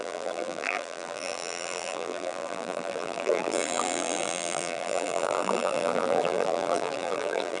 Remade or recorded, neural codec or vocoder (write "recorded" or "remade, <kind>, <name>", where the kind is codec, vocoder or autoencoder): remade, vocoder, BigVGAN v2